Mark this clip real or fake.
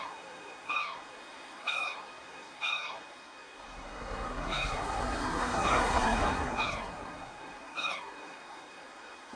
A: fake